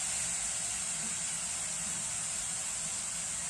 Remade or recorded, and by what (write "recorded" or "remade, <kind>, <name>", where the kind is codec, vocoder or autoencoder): recorded